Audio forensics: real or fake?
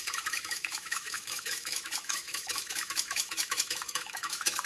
fake